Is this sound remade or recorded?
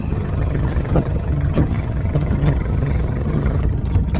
remade